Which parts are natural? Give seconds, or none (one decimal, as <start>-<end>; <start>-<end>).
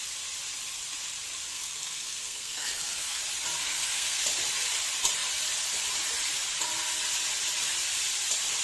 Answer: 0.0-1.5; 3.2-3.6; 4.2-8.6